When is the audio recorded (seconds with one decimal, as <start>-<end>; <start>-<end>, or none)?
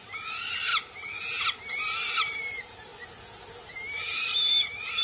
0.7-1.6; 2.9-3.6